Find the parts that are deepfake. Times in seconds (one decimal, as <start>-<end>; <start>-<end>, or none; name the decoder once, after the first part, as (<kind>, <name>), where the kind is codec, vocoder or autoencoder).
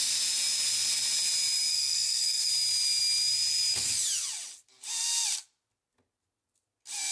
1.7-2.5 (codec, SNAC)